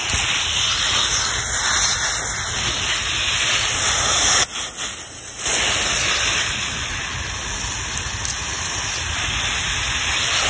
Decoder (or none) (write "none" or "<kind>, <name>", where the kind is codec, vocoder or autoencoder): none